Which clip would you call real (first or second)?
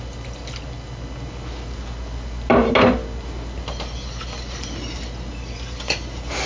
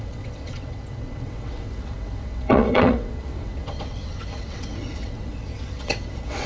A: first